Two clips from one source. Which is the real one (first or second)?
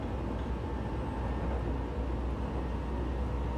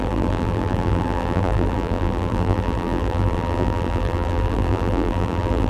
first